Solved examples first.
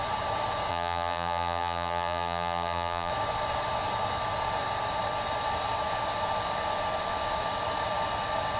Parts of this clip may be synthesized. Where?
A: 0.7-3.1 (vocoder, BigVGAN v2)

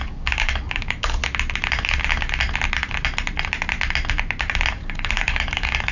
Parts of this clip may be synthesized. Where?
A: 0.0-1.2 (codec, DAC); 4.7-5.9

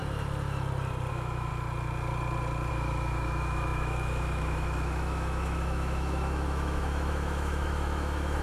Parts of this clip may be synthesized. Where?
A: 1.1-1.5 (autoencoder, DAC-VAE); 2.7-8.4

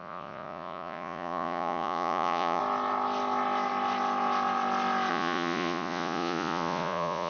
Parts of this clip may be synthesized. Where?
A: 0.0-2.6 (vocoder, Vocos); 5.1-7.3

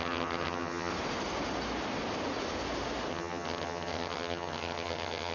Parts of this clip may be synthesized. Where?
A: 0.0-0.9 (vocoder, HiFi-GAN); 3.1-5.3

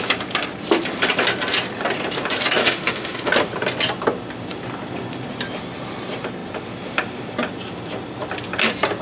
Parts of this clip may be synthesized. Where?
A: 2.6-3.3 (autoencoder, DAC-VAE)

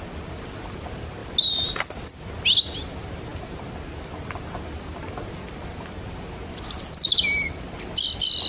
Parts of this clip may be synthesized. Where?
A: none

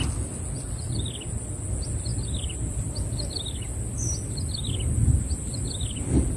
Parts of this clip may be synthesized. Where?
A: none